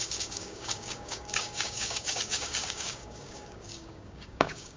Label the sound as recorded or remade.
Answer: remade